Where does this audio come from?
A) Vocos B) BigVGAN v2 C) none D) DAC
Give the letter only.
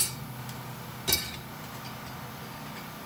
C